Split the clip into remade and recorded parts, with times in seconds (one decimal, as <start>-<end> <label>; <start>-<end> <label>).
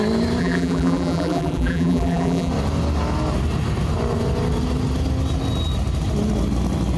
0.0-0.4 recorded; 0.4-2.5 remade; 2.5-7.0 recorded